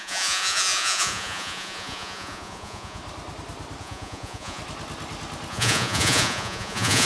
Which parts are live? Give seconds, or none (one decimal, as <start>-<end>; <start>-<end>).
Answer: 3.0-3.8; 4.6-5.5